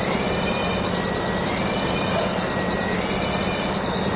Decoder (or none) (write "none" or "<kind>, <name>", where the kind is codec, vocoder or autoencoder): none